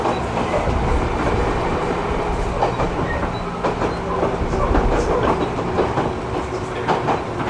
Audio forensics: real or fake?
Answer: real